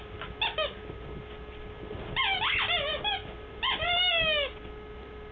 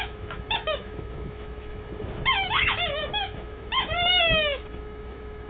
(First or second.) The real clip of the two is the first